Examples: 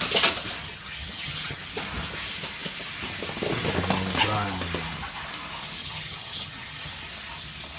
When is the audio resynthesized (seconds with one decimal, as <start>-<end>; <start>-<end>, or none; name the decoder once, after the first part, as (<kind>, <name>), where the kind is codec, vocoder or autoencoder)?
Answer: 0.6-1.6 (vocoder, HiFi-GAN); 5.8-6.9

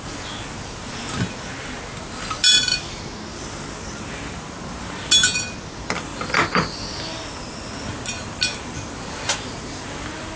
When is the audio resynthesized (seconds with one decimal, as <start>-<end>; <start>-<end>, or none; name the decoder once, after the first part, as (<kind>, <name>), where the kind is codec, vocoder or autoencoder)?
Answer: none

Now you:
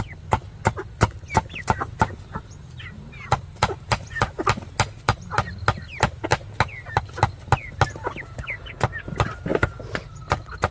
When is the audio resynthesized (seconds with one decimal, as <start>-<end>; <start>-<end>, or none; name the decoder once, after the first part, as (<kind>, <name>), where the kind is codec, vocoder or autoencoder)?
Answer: none

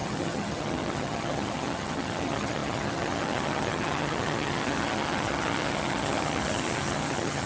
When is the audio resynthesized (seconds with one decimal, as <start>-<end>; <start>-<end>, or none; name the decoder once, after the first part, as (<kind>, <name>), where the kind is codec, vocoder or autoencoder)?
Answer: 0.0-7.5 (vocoder, HiFi-GAN)

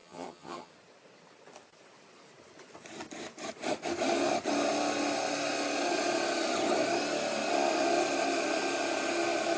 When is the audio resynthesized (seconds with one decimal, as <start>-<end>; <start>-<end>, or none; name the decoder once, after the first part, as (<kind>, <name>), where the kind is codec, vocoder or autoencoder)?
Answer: 0.0-0.7 (vocoder, HiFi-GAN)

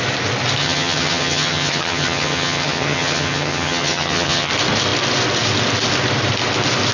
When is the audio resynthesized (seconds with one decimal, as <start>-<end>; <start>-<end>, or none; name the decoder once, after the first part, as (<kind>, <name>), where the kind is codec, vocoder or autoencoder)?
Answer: 0.6-4.5 (vocoder, HiFi-GAN)